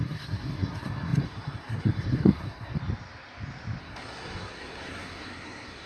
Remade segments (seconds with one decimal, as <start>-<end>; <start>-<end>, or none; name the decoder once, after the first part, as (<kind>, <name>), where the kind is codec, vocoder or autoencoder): 0.0-2.8 (codec, SNAC); 3.8-5.9